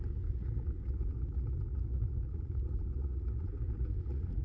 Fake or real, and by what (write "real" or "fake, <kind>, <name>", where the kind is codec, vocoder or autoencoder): fake, vocoder, Vocos